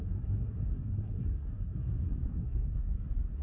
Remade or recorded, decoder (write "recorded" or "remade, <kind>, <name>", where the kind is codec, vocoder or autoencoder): remade, codec, SNAC